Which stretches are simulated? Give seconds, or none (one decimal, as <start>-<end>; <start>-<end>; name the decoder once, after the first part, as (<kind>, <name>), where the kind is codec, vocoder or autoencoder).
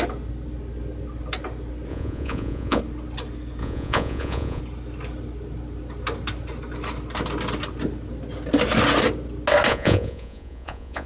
1.9-2.8 (vocoder, Vocos); 3.6-4.6; 9.7-11.1